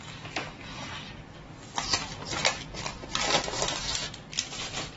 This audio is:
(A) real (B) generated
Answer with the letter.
A